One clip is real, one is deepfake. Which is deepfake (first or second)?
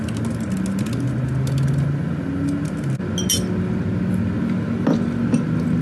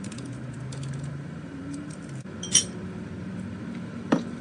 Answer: second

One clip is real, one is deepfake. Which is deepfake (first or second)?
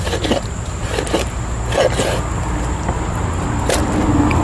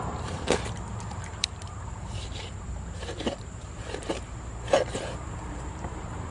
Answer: second